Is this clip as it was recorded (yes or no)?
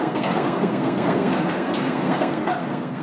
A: no